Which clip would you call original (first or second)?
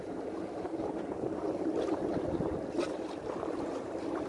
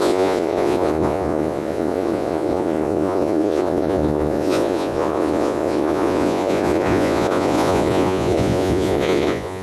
first